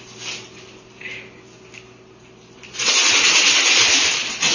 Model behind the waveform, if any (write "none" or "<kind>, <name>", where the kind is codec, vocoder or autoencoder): none